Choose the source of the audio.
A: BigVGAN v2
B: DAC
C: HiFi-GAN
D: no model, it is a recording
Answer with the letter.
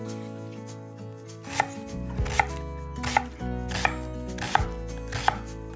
D